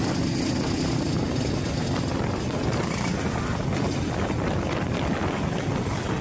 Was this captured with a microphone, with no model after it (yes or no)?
yes